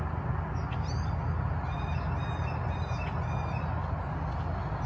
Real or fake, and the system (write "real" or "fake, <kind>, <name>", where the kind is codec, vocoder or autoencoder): real